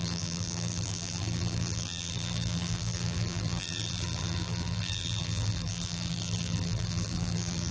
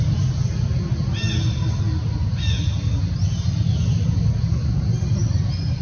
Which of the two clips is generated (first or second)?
first